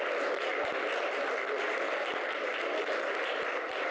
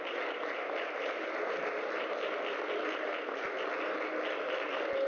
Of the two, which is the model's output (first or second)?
first